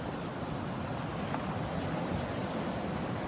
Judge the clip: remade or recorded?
recorded